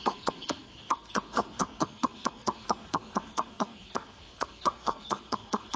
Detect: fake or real fake